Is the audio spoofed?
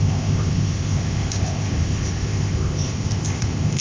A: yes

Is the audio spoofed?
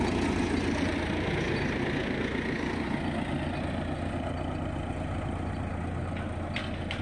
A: no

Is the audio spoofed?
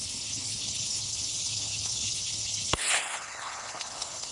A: yes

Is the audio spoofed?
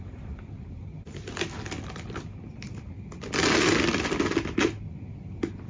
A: no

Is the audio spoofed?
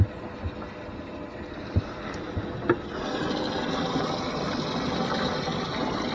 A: no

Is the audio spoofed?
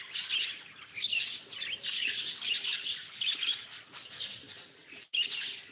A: no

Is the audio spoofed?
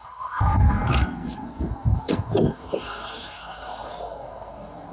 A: yes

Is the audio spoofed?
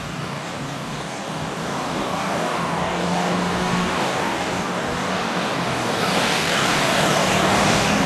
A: yes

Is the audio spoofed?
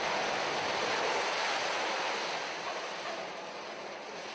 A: no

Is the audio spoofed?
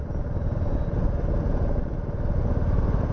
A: no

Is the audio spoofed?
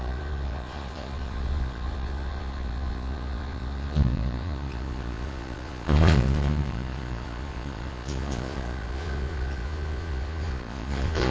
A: yes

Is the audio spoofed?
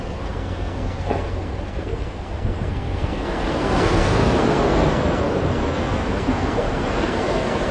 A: yes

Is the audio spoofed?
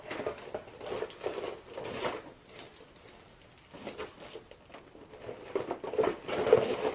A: no